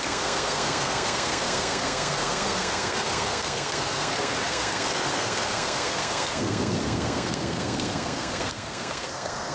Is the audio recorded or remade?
remade